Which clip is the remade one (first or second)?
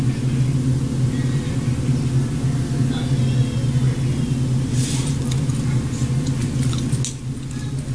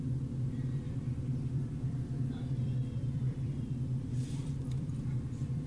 second